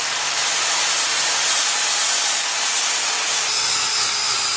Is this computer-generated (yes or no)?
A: no